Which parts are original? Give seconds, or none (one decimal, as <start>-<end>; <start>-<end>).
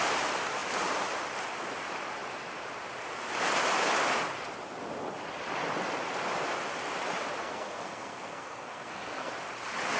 0.0-7.4; 9.3-10.0